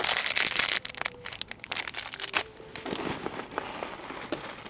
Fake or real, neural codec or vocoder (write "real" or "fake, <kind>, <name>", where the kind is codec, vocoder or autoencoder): real